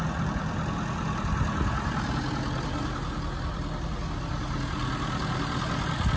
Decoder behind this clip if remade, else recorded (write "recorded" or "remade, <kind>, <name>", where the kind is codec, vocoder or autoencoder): recorded